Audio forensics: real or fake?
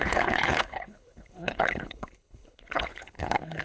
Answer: fake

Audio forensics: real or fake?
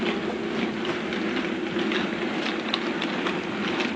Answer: real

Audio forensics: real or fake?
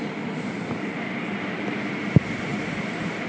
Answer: real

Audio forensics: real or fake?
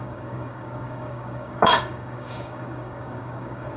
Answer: fake